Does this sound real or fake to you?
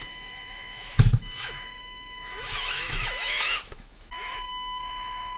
fake